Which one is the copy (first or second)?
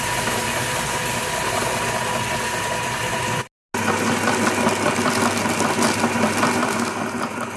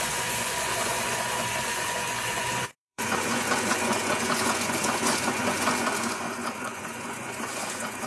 second